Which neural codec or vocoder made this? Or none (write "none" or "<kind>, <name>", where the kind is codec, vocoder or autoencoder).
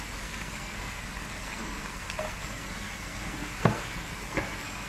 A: codec, SNAC